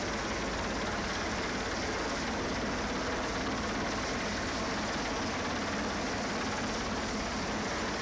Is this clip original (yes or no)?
yes